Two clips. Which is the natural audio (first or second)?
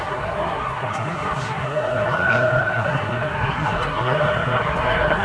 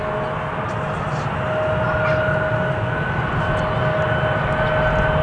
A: second